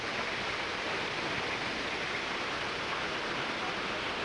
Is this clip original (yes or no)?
yes